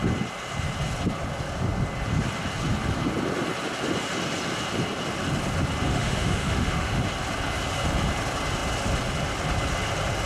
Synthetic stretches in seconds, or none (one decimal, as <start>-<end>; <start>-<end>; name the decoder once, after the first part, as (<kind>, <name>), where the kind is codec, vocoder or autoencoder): 5.9-7.0 (autoencoder, DAC-VAE)